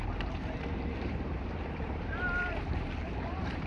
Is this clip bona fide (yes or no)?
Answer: no